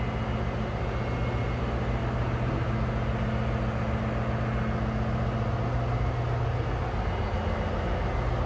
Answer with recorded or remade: recorded